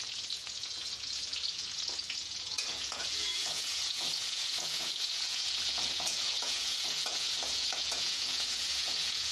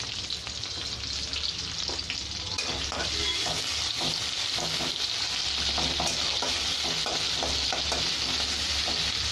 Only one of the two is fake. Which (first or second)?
first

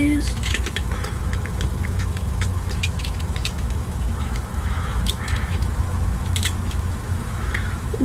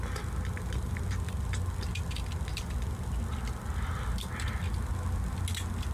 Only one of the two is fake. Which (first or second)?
first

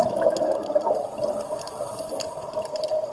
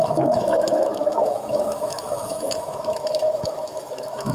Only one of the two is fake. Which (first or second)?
second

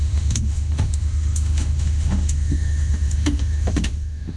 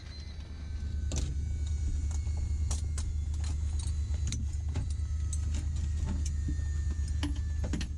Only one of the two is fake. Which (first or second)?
first